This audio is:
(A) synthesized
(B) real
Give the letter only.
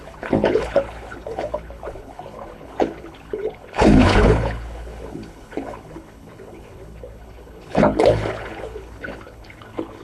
A